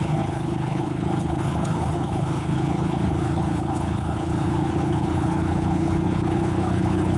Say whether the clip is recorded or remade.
remade